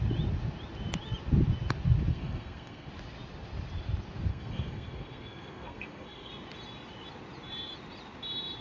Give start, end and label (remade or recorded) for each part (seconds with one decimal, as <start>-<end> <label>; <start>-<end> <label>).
0.0-2.1 recorded; 2.1-2.9 remade; 2.9-4.3 recorded; 4.3-6.3 remade; 6.3-8.6 recorded